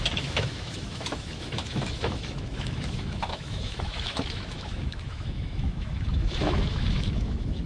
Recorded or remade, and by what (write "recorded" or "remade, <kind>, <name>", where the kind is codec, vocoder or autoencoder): remade, autoencoder, DAC-VAE